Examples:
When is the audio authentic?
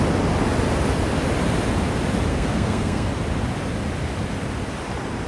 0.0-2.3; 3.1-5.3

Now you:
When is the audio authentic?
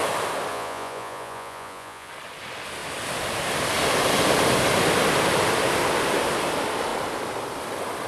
0.0-0.5; 2.1-8.1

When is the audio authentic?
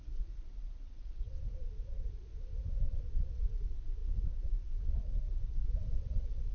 1.3-2.9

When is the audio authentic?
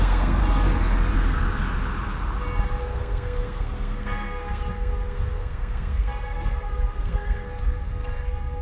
0.4-2.8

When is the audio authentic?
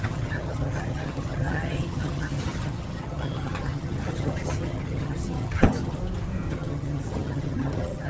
6.0-6.5